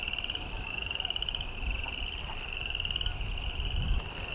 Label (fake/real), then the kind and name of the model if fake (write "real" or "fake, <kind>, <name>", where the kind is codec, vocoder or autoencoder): real